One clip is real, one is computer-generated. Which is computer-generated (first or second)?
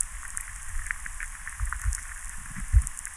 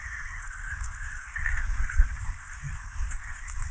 second